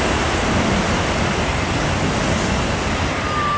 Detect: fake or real real